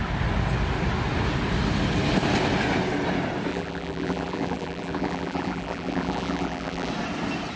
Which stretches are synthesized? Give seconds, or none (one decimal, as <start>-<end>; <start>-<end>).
3.5-6.9

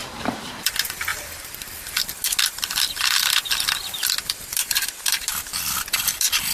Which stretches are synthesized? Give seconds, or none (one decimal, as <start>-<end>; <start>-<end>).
0.0-0.7

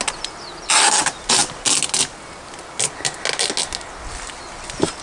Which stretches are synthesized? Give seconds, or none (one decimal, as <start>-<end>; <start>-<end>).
none

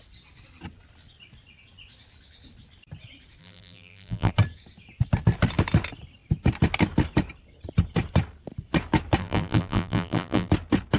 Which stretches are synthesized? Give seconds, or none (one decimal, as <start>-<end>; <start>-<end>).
3.4-4.3; 9.2-10.5

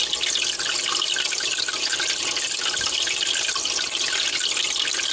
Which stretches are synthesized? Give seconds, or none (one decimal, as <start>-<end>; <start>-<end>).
none

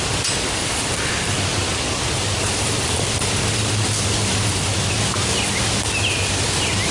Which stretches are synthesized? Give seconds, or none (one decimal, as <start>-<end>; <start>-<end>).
none

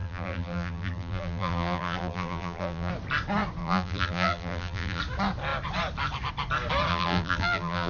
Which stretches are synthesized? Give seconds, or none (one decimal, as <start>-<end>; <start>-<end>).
0.0-2.9; 3.6-5.0; 6.9-7.9

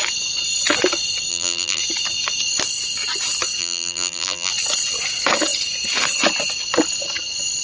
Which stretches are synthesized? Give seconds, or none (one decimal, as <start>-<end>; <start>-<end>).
1.3-1.8; 3.6-4.5